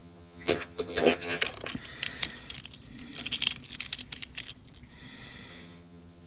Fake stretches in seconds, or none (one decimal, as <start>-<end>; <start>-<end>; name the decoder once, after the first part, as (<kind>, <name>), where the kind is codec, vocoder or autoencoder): 0.0-1.4 (vocoder, HiFi-GAN); 5.5-6.3